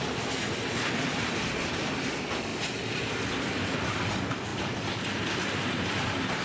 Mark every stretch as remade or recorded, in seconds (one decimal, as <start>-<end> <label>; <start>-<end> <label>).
0.0-2.5 remade; 2.5-3.1 recorded; 3.1-6.4 remade